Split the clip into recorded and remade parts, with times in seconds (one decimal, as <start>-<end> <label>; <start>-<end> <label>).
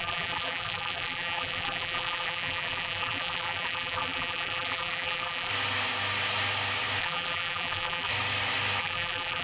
0.0-5.5 remade; 5.5-7.0 recorded; 7.0-8.1 remade; 8.1-8.8 recorded; 8.8-9.4 remade